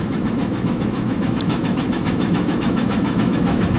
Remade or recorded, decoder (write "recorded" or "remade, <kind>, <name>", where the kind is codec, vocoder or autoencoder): remade, autoencoder, DAC-VAE